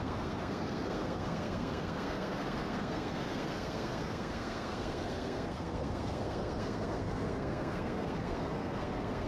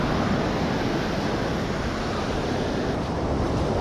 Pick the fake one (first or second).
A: first